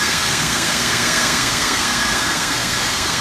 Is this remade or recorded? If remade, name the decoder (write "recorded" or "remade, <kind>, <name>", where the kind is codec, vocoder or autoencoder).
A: remade, codec, SNAC